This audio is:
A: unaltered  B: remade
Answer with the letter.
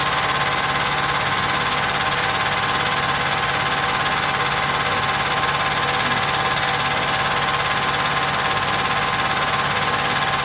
A